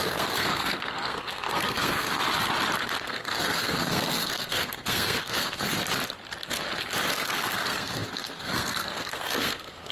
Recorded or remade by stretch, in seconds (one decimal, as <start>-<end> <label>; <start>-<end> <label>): 0.0-2.2 remade; 2.2-3.0 recorded; 3.0-5.8 remade; 5.8-7.1 recorded; 7.1-9.9 remade